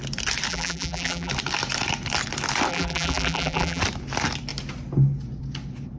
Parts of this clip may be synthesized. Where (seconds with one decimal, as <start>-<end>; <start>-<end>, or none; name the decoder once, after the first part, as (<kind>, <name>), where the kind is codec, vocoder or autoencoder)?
0.5-1.3 (vocoder, BigVGAN v2); 2.7-3.8

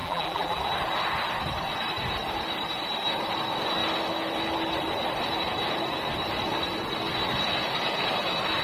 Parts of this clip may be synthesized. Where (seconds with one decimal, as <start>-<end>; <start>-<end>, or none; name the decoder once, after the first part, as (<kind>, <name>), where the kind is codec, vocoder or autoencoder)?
0.0-0.6 (vocoder, BigVGAN v2)

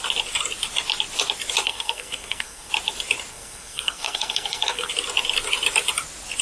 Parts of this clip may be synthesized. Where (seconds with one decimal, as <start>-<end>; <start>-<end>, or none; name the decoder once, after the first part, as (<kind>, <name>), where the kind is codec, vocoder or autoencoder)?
1.6-2.7 (codec, SNAC); 3.3-4.9

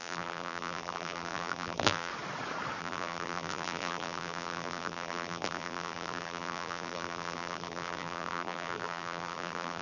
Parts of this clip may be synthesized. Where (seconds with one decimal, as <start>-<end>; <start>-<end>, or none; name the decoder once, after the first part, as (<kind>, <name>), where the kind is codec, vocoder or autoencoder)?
0.0-2.1 (vocoder, BigVGAN v2); 2.8-9.8

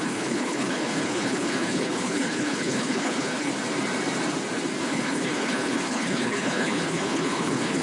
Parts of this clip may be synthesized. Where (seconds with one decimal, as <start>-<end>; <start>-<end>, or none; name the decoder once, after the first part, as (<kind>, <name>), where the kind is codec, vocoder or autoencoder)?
0.0-3.5 (codec, HILCodec); 4.8-7.8

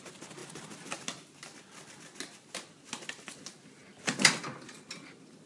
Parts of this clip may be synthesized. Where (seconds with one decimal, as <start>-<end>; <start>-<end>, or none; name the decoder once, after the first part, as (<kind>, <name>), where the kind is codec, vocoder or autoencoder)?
none

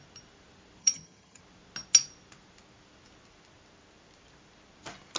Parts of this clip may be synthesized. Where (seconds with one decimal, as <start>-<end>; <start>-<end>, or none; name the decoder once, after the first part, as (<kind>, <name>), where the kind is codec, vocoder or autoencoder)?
0.8-1.4 (vocoder, HiFi-GAN)

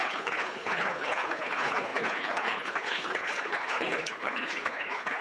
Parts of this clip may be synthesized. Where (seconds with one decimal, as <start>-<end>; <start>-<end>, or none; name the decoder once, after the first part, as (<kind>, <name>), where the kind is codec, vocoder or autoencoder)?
0.0-5.2 (codec, HILCodec)